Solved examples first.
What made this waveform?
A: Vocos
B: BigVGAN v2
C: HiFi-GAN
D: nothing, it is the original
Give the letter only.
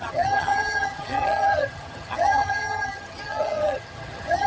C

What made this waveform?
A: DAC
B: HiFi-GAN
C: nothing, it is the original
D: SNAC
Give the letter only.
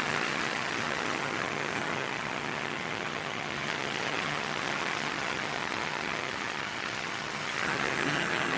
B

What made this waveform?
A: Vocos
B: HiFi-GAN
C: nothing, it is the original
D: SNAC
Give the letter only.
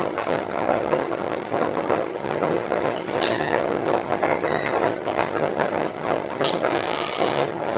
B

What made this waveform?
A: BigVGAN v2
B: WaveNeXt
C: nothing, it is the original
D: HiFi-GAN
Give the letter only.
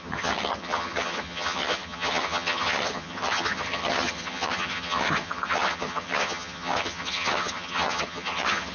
D